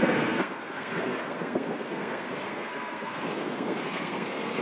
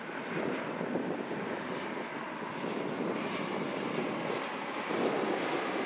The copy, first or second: first